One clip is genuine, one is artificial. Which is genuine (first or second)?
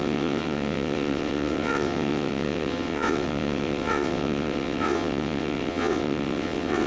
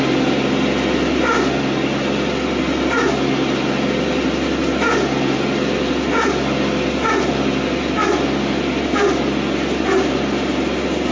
second